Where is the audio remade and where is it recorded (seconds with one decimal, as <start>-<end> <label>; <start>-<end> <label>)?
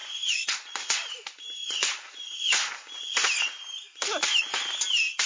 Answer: 0.0-1.1 remade; 1.1-1.6 recorded; 1.6-2.7 remade; 2.7-5.3 recorded